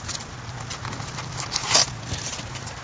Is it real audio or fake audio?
real